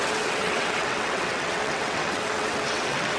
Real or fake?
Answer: fake